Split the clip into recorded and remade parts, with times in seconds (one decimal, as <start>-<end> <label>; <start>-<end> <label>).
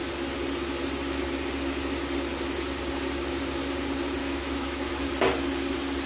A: 0.0-4.2 recorded; 4.2-4.9 remade; 4.9-6.1 recorded